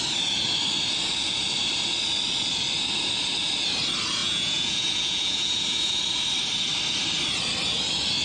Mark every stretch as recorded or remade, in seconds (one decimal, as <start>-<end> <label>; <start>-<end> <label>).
0.0-4.2 recorded; 4.2-6.0 remade; 6.0-8.2 recorded